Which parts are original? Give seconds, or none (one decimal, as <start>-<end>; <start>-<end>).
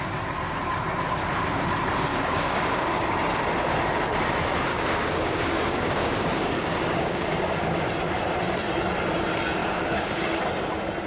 0.0-2.1; 2.9-4.7; 7.9-9.6; 10.4-11.1